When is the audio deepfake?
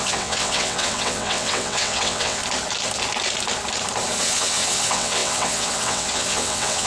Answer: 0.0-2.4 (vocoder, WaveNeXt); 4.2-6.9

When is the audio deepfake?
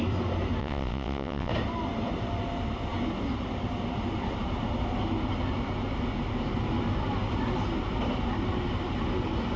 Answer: 0.6-1.5 (vocoder, WaveNeXt)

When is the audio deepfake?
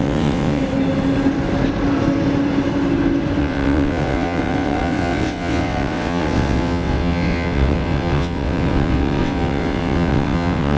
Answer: 0.0-0.6 (vocoder, WaveNeXt); 3.4-10.8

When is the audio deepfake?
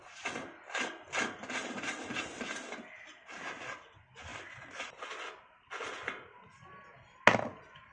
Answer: none